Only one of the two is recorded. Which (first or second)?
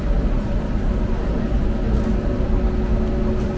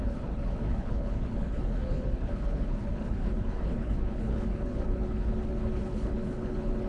first